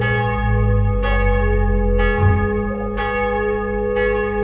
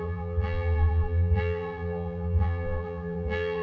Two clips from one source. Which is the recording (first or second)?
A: first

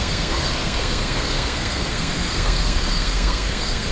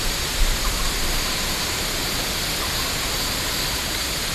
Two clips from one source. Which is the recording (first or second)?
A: second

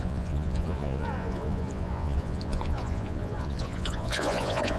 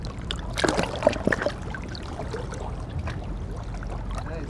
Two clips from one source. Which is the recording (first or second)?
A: second